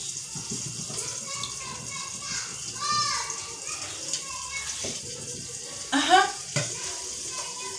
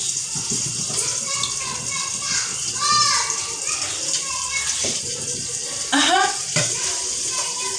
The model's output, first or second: second